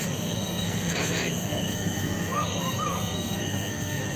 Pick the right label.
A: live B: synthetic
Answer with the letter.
B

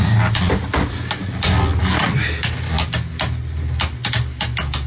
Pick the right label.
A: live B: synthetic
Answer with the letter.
A